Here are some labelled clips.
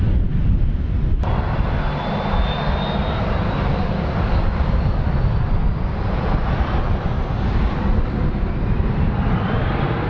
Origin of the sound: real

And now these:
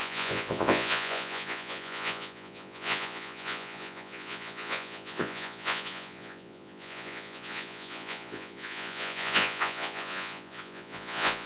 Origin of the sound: fake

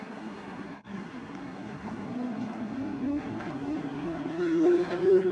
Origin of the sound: fake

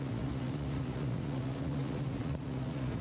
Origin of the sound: fake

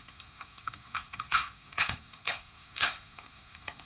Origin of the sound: fake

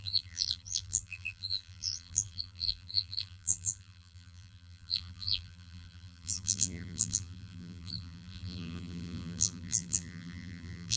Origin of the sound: fake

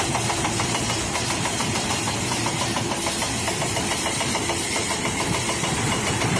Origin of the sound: fake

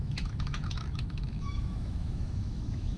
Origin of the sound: fake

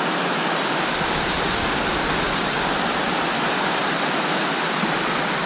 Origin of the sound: real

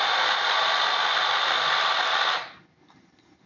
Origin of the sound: real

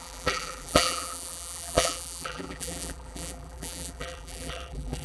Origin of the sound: fake